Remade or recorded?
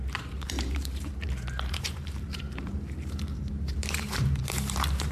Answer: remade